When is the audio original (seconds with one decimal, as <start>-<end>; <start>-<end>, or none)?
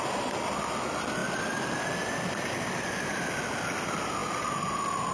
0.0-5.1